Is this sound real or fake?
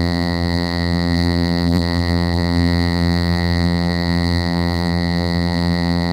fake